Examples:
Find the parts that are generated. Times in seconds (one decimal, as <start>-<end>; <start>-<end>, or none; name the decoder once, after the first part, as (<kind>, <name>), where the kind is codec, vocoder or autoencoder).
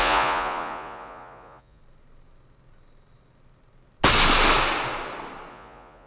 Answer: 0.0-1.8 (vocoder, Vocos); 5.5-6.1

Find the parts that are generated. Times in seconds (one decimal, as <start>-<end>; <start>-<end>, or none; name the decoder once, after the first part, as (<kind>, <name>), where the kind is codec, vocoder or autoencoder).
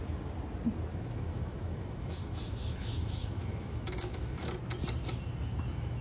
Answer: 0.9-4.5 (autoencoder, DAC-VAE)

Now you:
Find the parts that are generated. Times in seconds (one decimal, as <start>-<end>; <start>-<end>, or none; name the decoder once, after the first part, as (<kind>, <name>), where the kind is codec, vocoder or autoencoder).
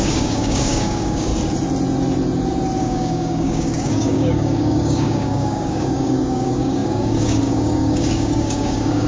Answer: 0.0-1.3 (codec, DAC); 2.8-9.1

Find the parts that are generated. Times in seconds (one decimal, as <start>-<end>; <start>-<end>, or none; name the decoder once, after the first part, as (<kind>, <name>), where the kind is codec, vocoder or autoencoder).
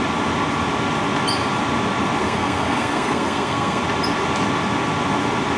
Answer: 2.2-3.8 (codec, SNAC)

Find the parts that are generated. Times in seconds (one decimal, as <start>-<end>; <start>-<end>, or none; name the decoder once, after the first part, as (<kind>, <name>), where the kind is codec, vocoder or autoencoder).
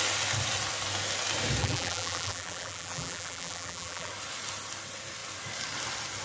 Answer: 1.6-4.1 (vocoder, BigVGAN v2)